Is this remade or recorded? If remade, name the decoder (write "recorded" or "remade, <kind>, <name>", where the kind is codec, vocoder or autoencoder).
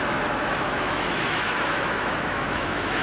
remade, autoencoder, DAC-VAE